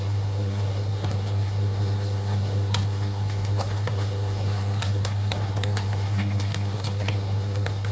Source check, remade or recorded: remade